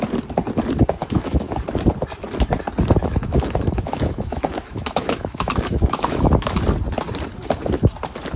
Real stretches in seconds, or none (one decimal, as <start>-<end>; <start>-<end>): 0.0-1.0; 1.5-3.0; 6.6-8.4